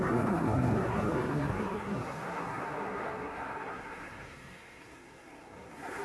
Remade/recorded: remade